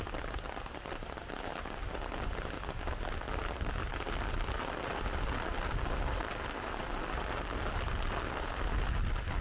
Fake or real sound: real